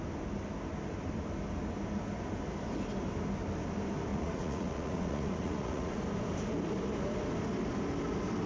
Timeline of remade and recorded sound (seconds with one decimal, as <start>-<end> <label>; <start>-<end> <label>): 0.0-4.1 recorded; 4.1-6.0 remade; 6.0-8.5 recorded